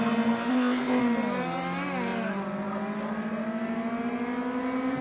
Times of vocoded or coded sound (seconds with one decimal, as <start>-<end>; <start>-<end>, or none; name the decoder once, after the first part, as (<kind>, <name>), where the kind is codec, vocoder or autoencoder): 0.5-1.0 (codec, ZipCodec)